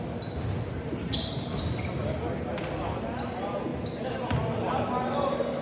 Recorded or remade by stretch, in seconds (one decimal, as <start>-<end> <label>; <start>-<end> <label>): 0.0-5.6 recorded